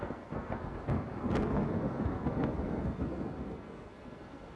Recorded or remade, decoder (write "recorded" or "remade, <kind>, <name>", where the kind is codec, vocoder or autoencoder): remade, codec, SNAC